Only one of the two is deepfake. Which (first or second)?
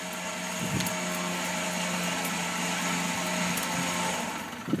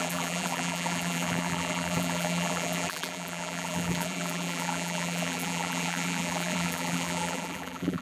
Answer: second